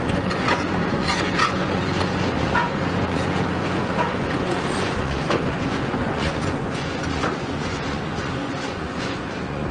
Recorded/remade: remade